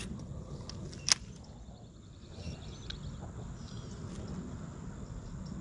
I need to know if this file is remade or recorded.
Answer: recorded